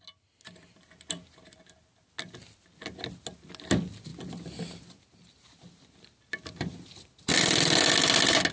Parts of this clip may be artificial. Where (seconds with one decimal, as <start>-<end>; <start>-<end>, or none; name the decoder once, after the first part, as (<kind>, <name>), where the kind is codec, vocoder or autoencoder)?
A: none